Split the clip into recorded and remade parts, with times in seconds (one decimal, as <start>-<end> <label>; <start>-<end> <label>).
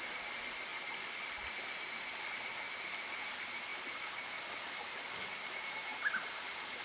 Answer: 0.0-6.8 recorded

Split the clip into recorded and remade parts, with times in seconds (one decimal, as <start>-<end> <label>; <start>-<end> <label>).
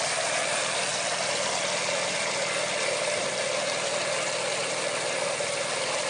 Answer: 0.0-6.1 recorded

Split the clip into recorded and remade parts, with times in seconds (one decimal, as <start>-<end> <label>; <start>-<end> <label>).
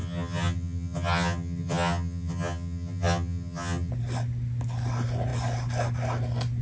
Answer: 0.0-3.9 remade; 3.9-6.6 recorded